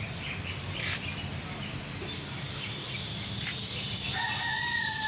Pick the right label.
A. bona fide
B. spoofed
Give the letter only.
A